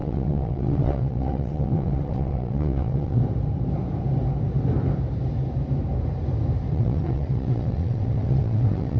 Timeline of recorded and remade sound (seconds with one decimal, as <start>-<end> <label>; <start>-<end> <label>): 0.0-3.2 remade; 3.2-6.7 recorded; 6.7-9.0 remade